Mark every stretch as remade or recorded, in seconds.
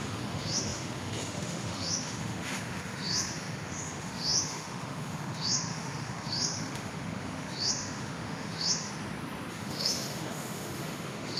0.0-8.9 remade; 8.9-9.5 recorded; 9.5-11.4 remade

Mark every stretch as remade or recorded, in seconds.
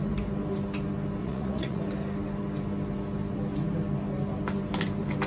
0.0-1.2 recorded; 1.2-1.8 remade; 1.8-5.3 recorded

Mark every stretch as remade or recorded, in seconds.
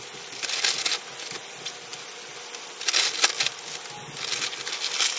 0.0-5.2 recorded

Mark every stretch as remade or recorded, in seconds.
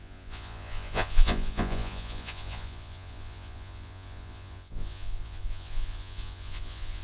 0.0-7.0 remade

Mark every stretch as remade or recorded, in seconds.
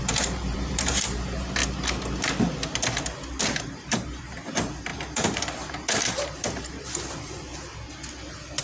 0.0-1.6 remade; 1.6-3.6 recorded; 3.6-7.5 remade; 7.5-8.6 recorded